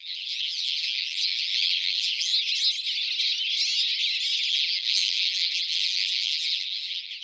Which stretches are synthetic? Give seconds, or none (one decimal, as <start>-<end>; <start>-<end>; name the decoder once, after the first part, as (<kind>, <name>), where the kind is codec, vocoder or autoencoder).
0.0-2.3 (vocoder, BigVGAN v2); 4.5-7.2